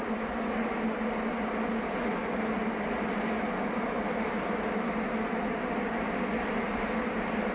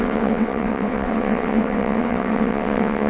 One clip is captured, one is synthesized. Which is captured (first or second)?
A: first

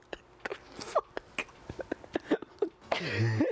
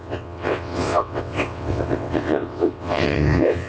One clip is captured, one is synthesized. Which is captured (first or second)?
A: first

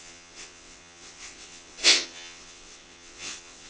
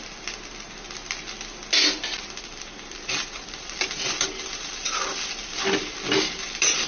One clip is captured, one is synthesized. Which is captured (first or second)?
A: second